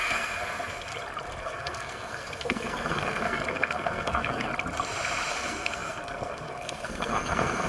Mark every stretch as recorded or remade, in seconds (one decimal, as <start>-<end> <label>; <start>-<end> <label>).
0.0-0.9 remade; 0.9-1.4 recorded; 1.4-4.5 remade; 4.5-5.3 recorded; 5.3-7.7 remade